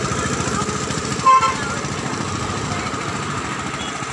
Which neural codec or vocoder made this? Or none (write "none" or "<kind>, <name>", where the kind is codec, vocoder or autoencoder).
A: vocoder, BigVGAN v2